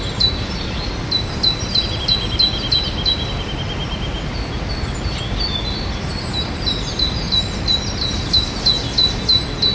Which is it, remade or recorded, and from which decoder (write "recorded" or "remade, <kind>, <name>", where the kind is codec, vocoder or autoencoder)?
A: recorded